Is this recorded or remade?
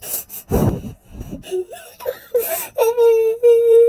recorded